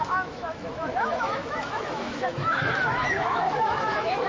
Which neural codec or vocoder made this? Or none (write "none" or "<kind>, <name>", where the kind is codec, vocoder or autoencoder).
autoencoder, DAC-VAE